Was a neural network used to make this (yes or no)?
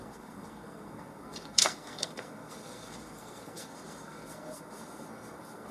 yes